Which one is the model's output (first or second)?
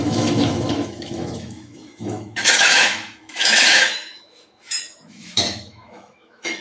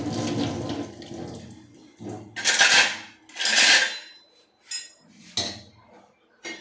first